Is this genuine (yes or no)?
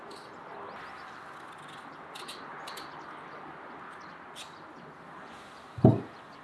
yes